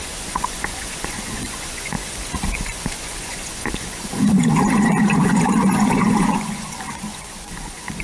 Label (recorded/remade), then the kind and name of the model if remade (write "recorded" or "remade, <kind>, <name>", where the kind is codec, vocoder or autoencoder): remade, vocoder, Vocos